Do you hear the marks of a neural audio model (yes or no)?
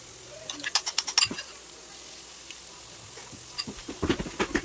no